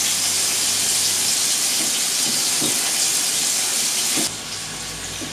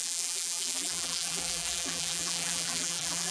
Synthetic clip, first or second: second